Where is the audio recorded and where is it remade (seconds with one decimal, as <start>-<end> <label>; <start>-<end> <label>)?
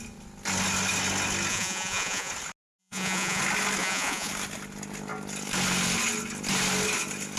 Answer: 0.0-1.5 recorded; 1.5-2.3 remade; 2.3-2.8 recorded; 2.8-3.4 remade; 3.4-3.8 recorded; 3.8-4.3 remade; 4.3-7.4 recorded